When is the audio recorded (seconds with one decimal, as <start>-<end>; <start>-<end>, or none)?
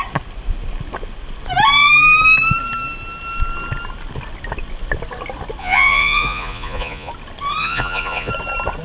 0.0-5.6; 7.1-7.6; 8.3-8.8